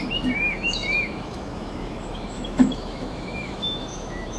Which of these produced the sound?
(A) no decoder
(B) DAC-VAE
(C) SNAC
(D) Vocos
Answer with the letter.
B